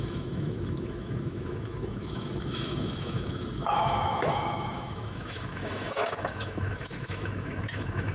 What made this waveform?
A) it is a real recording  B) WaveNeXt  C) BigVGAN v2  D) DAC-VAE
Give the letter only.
D